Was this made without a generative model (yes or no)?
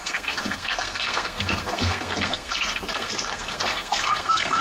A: no